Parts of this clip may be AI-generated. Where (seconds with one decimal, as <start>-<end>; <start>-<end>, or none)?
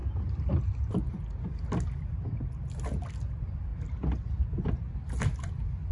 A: none